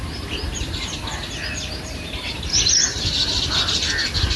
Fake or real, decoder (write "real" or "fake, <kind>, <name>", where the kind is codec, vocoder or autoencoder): real